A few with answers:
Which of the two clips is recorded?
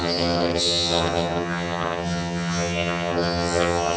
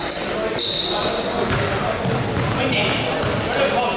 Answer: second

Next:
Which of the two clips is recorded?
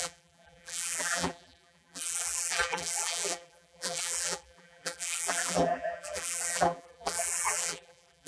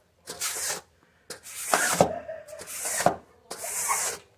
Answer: second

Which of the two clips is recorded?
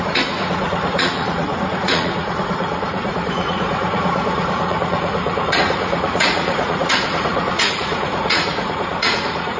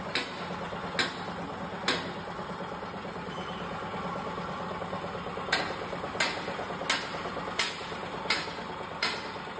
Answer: second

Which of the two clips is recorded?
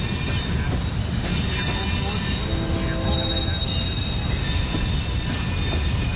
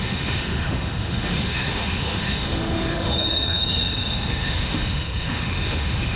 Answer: first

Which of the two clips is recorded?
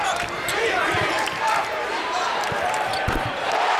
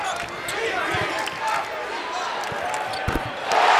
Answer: second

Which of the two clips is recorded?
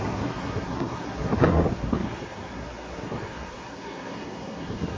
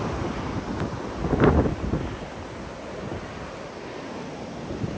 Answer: second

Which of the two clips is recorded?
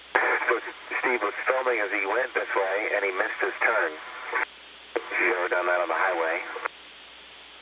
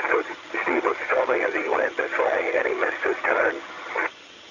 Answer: first